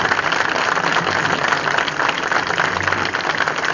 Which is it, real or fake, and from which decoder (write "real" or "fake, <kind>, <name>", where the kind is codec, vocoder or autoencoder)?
real